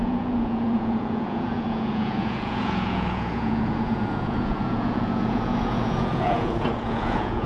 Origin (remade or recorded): remade